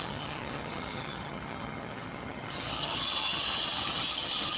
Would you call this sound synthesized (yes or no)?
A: yes